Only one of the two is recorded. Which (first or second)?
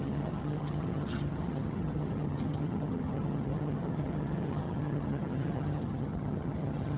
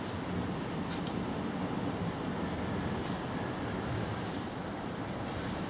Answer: second